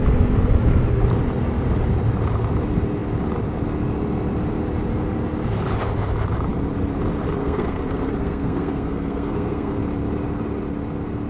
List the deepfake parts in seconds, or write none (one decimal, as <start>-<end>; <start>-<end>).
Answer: 7.4-9.8